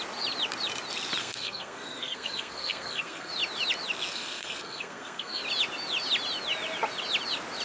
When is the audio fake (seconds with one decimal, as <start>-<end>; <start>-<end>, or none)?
1.2-3.3; 4.1-5.4